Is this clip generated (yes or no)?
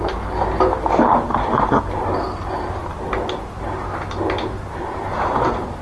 no